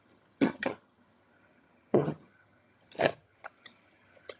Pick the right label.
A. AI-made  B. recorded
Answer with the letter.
A